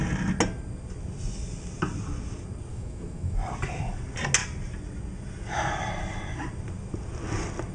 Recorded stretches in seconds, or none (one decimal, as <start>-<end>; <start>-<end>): 0.0-2.7; 3.4-7.7